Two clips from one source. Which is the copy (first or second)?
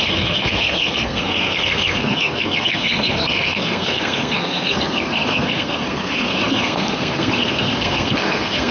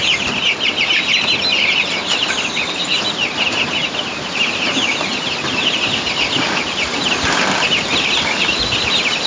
first